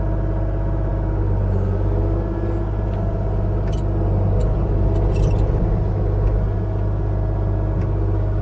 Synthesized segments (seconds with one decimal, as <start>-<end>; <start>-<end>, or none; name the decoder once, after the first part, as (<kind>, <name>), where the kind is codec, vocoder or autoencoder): none